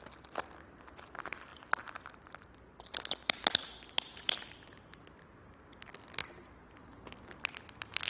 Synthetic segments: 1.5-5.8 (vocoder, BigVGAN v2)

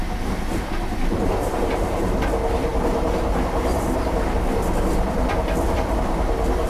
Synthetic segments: none

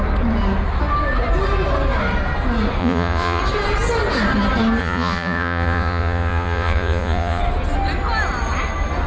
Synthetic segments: 2.8-3.4 (vocoder, Vocos); 4.8-7.4